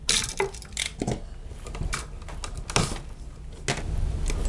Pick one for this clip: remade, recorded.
recorded